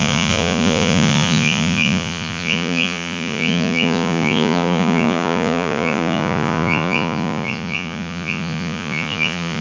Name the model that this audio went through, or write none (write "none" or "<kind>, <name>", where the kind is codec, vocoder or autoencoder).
vocoder, Vocos